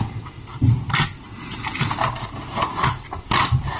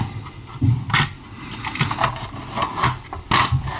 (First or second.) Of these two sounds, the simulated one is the first